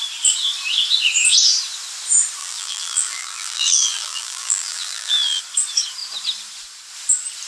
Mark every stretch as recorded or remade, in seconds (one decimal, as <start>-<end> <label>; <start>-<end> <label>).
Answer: 0.0-2.4 recorded; 2.4-5.4 remade; 5.4-7.5 recorded